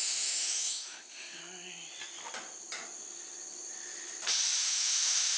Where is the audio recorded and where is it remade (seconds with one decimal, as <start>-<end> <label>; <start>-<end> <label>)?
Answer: 0.0-1.4 remade; 1.4-4.6 recorded; 4.6-5.4 remade